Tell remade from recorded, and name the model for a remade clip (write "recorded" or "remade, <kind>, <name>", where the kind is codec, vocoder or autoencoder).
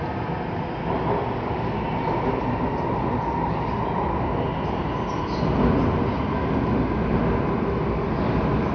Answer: recorded